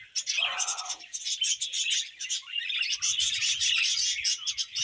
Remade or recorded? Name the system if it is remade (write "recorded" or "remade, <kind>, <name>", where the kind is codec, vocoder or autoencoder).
remade, vocoder, BigVGAN v2